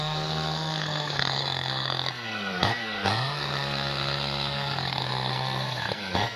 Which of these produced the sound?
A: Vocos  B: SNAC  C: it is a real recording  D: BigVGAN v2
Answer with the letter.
B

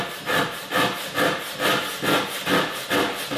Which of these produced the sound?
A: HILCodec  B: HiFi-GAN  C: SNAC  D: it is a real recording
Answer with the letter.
D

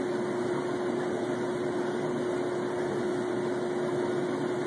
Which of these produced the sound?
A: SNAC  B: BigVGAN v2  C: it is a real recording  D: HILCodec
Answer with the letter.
C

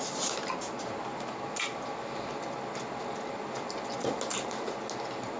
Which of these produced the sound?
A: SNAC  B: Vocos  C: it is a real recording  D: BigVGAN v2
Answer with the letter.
C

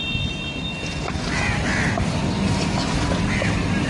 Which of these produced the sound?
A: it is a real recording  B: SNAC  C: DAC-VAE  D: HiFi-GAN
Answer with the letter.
A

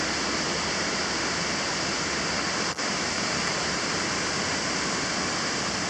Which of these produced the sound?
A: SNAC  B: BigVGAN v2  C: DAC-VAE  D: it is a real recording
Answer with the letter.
D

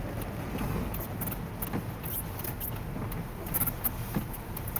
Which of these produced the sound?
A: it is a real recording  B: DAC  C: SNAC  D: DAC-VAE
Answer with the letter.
A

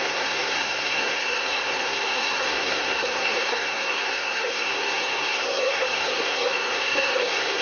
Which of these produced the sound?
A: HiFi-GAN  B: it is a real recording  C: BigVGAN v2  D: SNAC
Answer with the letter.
D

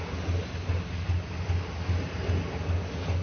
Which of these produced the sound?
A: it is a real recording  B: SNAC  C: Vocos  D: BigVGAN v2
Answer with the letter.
A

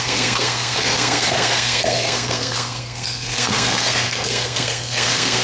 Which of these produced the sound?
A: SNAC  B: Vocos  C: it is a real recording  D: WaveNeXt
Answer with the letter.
A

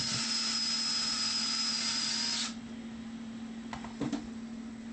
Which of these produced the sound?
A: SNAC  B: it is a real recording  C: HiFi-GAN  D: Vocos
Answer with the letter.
B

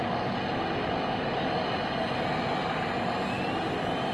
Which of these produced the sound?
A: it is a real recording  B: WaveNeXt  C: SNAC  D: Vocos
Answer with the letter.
A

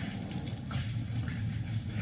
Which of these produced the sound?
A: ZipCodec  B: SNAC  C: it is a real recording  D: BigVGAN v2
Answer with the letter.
C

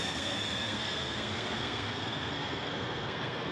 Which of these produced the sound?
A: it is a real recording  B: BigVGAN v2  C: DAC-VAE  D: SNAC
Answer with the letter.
D